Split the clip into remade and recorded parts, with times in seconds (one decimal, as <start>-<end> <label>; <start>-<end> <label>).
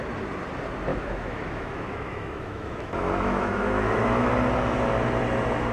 0.0-0.9 recorded; 0.9-4.3 remade; 4.3-5.7 recorded